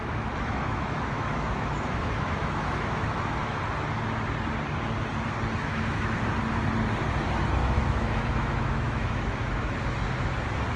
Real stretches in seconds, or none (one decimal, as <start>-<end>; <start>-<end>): 3.6-5.6; 6.2-7.6; 9.7-10.8